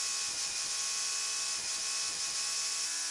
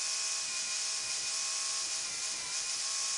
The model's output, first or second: second